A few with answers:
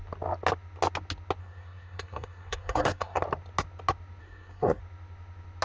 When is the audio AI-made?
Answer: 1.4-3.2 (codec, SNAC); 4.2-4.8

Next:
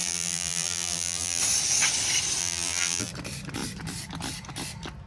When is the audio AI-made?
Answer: 0.0-1.4 (vocoder, BigVGAN v2); 2.4-3.1

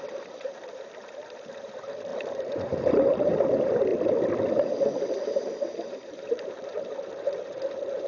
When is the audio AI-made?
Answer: 0.0-3.9 (vocoder, BigVGAN v2); 5.2-8.1

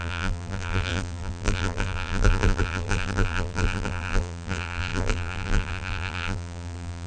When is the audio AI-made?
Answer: 0.0-7.1 (vocoder, BigVGAN v2)